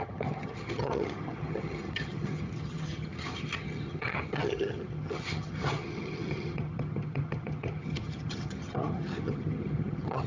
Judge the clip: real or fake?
fake